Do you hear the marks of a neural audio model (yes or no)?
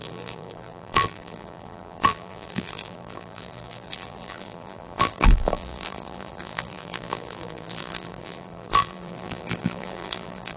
yes